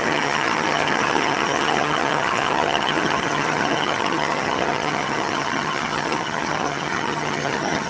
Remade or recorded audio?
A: remade